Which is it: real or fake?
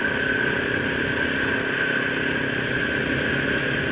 real